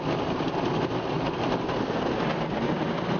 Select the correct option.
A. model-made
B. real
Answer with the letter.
B